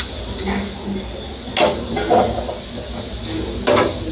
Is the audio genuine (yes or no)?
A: yes